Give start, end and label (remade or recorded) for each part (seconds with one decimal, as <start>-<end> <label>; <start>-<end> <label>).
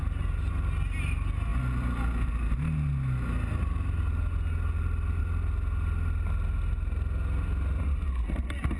0.0-8.8 recorded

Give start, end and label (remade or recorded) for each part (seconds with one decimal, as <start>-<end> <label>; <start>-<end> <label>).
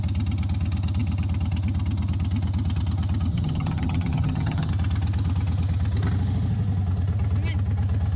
0.0-3.3 recorded; 3.3-4.7 remade; 4.7-8.2 recorded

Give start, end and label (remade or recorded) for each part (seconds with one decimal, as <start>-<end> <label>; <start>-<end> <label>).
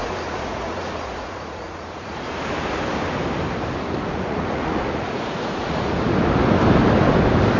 0.0-2.4 remade; 2.4-3.8 recorded; 3.8-5.9 remade; 5.9-7.6 recorded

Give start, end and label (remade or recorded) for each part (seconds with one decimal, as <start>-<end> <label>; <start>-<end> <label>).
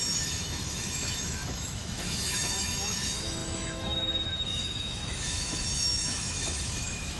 0.0-7.2 remade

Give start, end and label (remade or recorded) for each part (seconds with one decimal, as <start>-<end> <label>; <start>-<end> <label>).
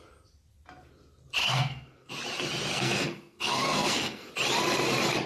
0.0-1.4 recorded; 1.4-2.1 remade; 2.1-2.7 recorded; 2.7-4.3 remade; 4.3-5.3 recorded